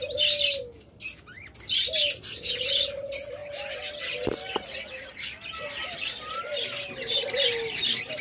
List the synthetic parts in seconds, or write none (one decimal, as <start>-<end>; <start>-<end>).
none